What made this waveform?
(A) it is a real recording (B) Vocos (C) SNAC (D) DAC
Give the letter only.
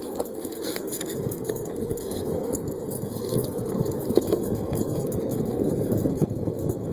C